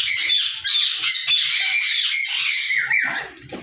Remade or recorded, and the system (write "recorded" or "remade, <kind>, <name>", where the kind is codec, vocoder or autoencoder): recorded